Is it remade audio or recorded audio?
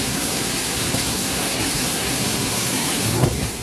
remade